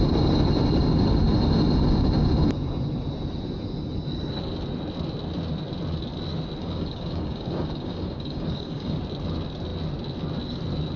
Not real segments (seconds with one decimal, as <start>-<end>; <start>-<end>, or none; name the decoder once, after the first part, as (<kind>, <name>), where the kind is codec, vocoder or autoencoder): 6.6-9.0 (codec, DAC)